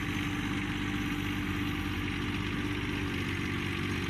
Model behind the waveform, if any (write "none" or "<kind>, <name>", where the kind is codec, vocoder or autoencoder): none